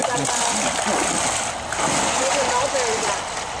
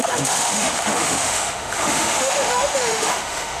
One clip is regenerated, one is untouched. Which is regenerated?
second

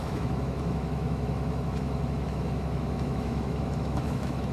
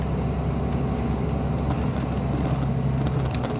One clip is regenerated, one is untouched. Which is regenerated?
first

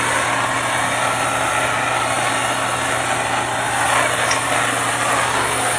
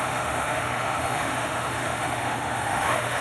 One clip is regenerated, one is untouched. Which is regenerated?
second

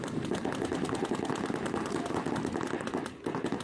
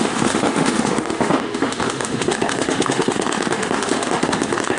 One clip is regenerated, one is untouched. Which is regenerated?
second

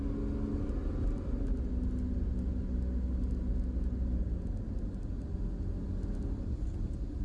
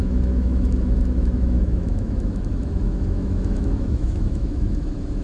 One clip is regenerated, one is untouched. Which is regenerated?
second